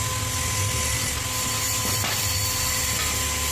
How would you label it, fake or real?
real